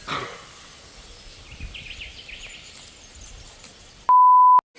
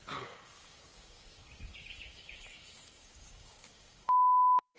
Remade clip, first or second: second